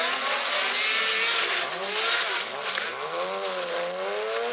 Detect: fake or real real